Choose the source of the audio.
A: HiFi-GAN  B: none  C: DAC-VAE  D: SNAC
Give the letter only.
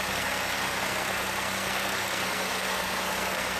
D